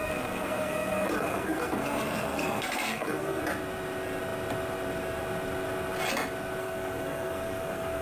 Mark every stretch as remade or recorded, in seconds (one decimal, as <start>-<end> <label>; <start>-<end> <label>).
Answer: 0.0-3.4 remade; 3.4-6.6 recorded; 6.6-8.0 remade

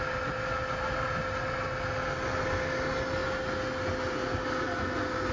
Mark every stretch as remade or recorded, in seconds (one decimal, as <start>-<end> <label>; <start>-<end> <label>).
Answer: 0.0-5.3 recorded

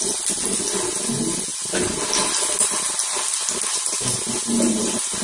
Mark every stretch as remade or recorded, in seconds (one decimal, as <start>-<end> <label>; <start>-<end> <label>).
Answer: 0.0-5.2 recorded

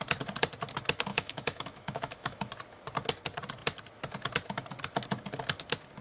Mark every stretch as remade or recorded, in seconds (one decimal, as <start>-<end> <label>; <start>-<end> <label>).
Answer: 0.0-1.1 recorded; 1.1-2.5 remade; 2.5-6.0 recorded